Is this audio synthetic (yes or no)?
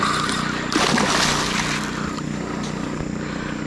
no